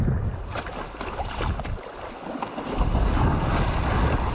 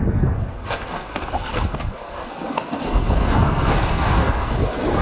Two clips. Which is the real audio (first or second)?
first